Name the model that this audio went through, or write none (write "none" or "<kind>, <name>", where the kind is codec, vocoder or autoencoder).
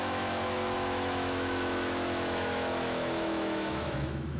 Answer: autoencoder, DAC-VAE